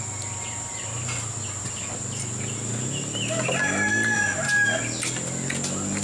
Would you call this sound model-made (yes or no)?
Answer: no